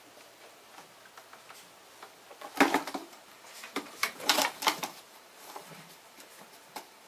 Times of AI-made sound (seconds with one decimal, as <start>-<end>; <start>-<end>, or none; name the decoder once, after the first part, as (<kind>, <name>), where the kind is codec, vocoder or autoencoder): 3.0-7.1 (vocoder, BigVGAN v2)

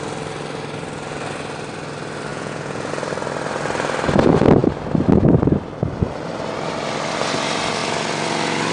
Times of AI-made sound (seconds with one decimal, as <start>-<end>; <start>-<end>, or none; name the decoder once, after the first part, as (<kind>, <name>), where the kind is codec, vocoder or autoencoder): 2.3-2.9 (vocoder, Vocos)

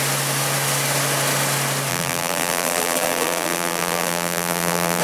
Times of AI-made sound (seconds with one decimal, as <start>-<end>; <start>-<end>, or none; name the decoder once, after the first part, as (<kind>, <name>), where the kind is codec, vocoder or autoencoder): 1.9-5.0 (vocoder, BigVGAN v2)

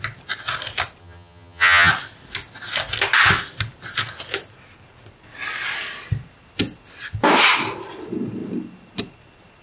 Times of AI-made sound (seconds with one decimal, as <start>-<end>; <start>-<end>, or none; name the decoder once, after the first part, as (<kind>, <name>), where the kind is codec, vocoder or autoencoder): 1.0-1.9 (vocoder, HiFi-GAN)

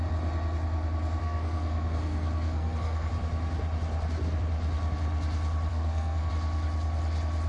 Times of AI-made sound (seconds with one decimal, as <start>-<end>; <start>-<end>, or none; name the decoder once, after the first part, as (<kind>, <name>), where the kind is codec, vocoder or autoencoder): 1.2-3.1 (codec, SNAC); 5.7-6.3